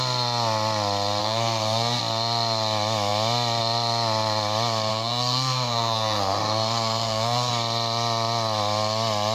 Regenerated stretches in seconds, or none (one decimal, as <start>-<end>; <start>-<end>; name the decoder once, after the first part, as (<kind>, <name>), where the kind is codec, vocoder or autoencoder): 1.2-2.0 (codec, SNAC); 4.9-7.5